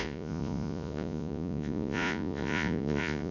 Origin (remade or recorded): remade